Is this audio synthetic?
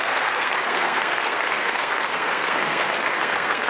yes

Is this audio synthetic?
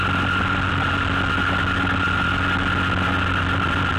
no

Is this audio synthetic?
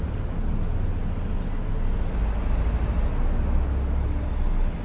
no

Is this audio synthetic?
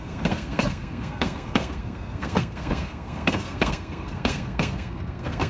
yes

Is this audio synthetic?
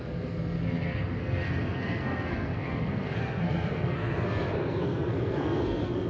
yes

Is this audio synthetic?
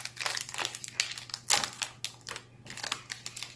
no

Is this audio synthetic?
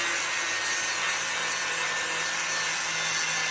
no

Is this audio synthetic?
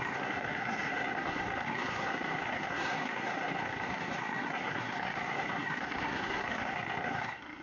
yes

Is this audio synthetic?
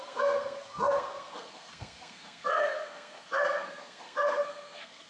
yes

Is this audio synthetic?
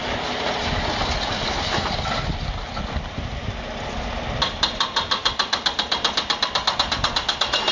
no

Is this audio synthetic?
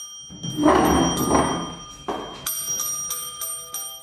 no